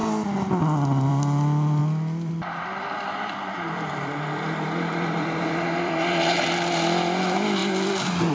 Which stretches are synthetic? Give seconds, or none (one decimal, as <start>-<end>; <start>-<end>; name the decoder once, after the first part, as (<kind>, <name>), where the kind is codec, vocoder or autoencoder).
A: 1.1-1.8 (vocoder, BigVGAN v2); 2.3-7.6